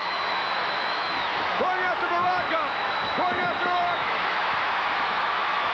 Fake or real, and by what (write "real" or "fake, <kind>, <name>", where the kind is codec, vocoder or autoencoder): fake, autoencoder, DAC-VAE